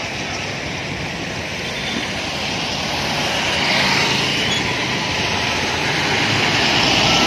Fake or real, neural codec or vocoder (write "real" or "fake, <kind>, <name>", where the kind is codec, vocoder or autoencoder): real